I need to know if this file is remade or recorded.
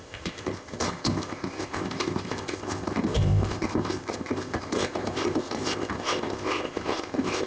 remade